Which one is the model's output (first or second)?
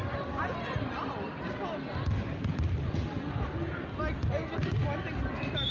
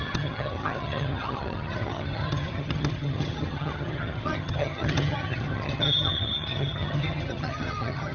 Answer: second